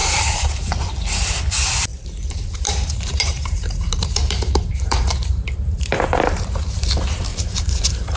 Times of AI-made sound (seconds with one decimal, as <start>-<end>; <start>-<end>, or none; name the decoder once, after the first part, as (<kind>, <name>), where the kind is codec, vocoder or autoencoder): 0.0-0.5 (vocoder, BigVGAN v2); 1.9-6.7; 7.3-8.2